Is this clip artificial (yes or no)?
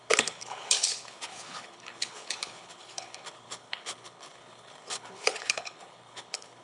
yes